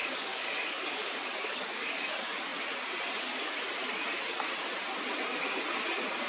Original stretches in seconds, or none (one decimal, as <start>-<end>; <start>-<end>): 2.1-6.3